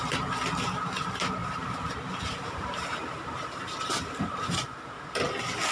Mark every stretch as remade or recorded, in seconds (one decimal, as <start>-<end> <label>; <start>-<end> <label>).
0.0-1.4 recorded; 1.4-4.8 remade; 4.8-5.7 recorded